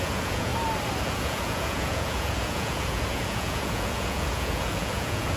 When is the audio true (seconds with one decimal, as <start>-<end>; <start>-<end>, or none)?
0.5-1.0